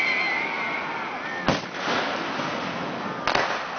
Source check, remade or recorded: recorded